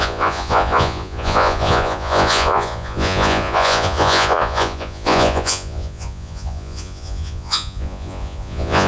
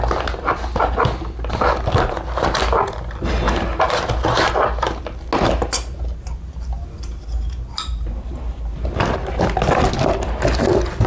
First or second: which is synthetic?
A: first